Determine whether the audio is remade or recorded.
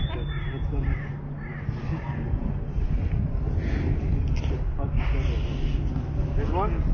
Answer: recorded